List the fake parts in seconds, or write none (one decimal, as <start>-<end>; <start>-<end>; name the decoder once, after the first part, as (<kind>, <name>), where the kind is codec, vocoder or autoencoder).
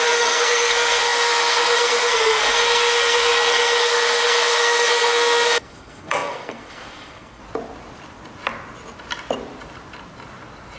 0.0-7.4 (codec, SNAC)